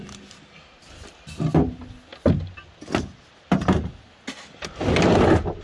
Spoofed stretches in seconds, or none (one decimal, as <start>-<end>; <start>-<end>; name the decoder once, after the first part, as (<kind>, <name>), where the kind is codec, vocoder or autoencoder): none